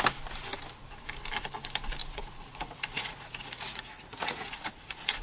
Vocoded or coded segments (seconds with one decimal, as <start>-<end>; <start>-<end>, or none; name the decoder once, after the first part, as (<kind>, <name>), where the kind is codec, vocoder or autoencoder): 2.0-5.2 (vocoder, Vocos)